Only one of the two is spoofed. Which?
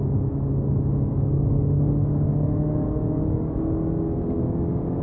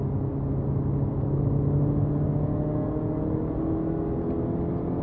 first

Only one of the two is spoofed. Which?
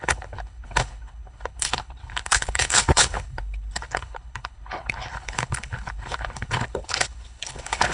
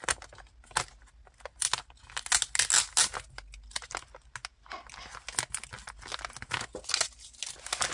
first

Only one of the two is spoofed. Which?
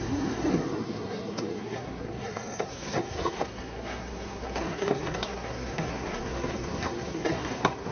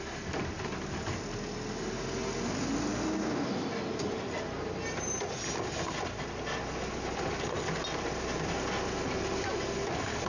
first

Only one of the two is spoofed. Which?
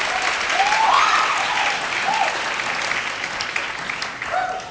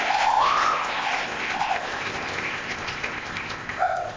second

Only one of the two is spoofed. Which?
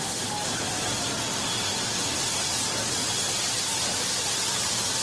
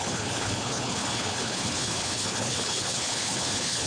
second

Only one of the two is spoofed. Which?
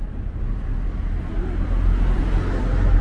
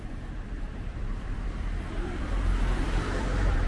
second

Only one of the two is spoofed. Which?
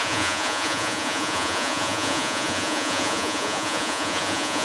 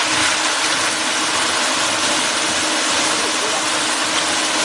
first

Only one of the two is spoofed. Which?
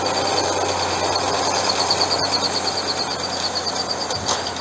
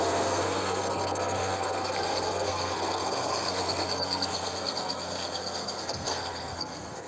second